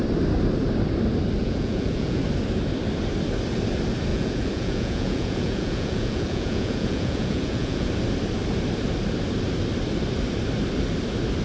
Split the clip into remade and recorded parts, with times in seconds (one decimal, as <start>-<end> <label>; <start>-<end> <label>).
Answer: 0.0-1.4 recorded; 1.4-2.2 remade; 2.2-4.1 recorded; 4.1-7.9 remade; 7.9-11.4 recorded